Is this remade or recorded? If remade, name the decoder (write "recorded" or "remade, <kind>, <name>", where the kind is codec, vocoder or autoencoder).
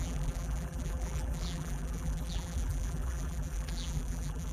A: remade, vocoder, BigVGAN v2